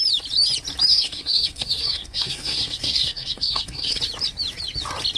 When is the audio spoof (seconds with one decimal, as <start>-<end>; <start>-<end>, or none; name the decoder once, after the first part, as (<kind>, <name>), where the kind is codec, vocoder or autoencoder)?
0.9-4.0 (codec, SNAC)